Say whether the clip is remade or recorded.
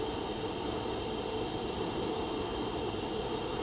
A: recorded